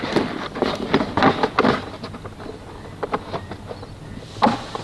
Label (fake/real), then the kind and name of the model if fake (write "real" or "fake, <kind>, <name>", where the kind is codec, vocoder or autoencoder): real